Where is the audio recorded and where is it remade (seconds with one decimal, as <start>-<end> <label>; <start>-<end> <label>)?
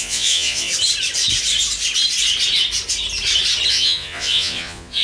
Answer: 0.0-0.7 remade; 0.7-3.7 recorded; 3.7-5.0 remade